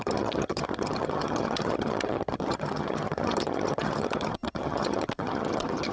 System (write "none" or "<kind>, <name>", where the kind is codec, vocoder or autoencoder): vocoder, HiFi-GAN